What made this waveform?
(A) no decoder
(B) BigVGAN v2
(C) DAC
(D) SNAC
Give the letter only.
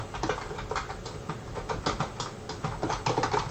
A